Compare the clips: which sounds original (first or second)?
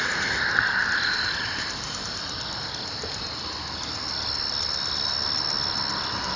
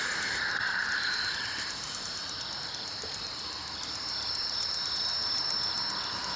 first